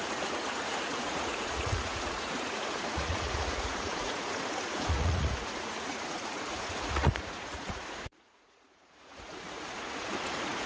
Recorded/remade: remade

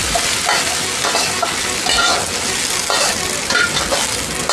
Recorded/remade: recorded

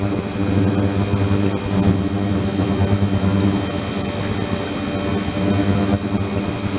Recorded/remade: recorded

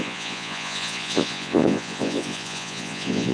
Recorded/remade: remade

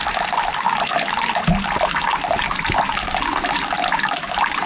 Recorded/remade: recorded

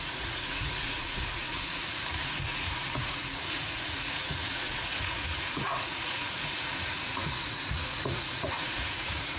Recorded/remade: remade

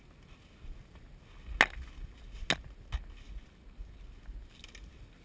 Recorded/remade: recorded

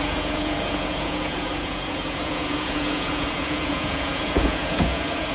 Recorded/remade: remade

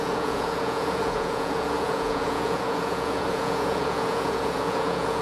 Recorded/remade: remade